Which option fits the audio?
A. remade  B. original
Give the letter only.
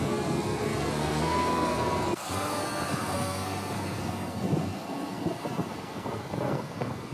A